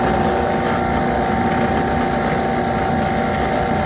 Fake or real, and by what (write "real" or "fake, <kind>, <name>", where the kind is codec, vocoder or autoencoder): real